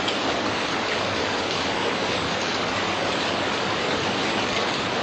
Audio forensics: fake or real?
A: fake